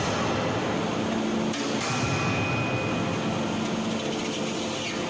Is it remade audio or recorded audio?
recorded